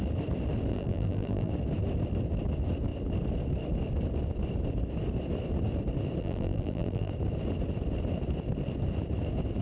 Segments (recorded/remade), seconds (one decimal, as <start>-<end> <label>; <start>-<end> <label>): 0.0-0.7 recorded; 0.7-1.5 remade; 1.5-6.2 recorded; 6.2-7.1 remade; 7.1-9.6 recorded